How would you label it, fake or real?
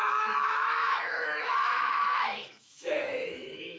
fake